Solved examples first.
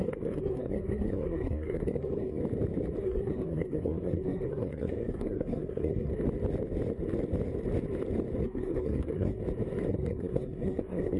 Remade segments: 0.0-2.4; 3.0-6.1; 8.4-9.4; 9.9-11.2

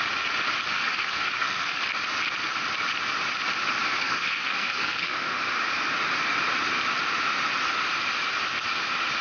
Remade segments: 0.7-1.8; 4.0-5.4

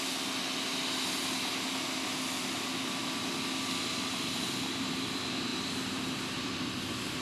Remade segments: none

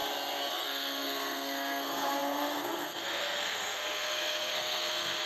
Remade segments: 0.5-5.3

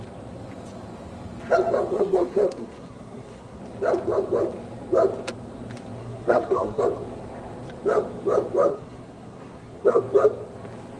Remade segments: 1.9-3.6; 6.0-6.8; 8.7-10.0

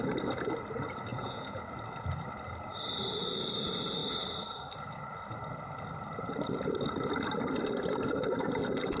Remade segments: 1.1-1.6